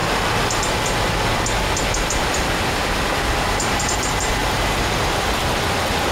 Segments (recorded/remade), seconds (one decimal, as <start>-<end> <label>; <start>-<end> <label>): 0.0-3.5 recorded; 3.5-5.4 remade; 5.4-6.1 recorded